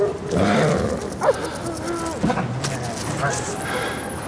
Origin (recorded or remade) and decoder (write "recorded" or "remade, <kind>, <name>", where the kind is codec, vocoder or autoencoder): recorded